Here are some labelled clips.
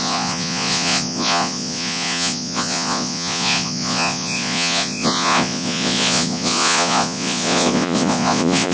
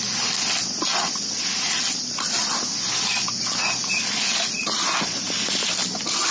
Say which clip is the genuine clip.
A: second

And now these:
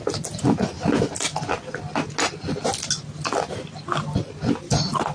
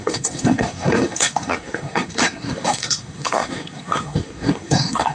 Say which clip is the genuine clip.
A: first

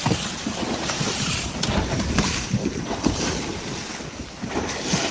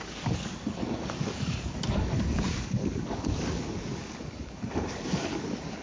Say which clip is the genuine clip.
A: first